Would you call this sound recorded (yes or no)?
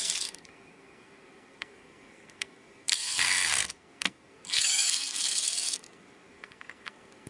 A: no